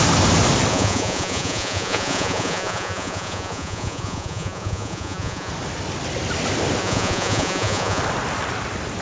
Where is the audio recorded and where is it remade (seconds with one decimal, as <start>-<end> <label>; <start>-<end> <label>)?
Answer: 0.0-0.7 recorded; 0.7-5.5 remade; 5.5-6.8 recorded; 6.8-8.0 remade; 8.0-9.0 recorded